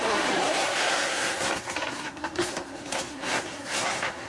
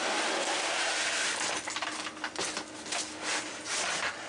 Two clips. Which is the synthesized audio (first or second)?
first